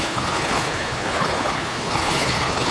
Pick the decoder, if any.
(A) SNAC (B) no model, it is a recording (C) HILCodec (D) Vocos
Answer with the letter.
C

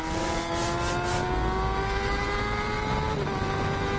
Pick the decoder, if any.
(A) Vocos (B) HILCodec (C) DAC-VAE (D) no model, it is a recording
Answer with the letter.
D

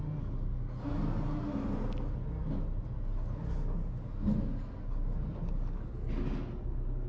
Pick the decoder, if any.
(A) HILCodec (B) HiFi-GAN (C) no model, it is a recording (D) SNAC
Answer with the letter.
C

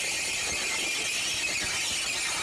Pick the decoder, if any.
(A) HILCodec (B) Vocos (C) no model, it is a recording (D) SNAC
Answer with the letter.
C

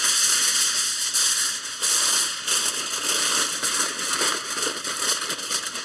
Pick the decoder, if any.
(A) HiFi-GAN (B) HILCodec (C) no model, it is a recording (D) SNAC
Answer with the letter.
C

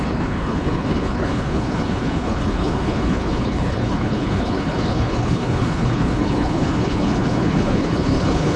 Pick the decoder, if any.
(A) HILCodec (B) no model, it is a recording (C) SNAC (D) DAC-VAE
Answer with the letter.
A